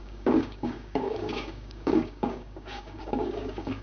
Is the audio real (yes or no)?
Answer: no